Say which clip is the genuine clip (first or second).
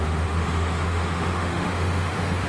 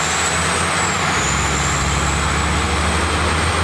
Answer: second